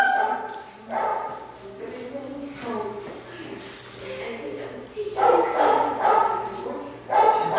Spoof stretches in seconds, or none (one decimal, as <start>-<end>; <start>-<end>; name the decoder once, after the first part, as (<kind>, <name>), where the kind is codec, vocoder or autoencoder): 0.0-1.1 (vocoder, BigVGAN v2); 4.7-6.2; 7.1-7.6